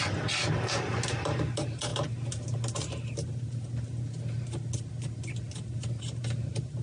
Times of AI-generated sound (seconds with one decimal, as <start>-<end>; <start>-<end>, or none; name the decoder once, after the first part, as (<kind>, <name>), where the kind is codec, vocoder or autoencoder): none